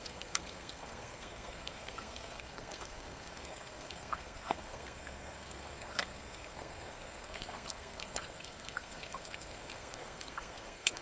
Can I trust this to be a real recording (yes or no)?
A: no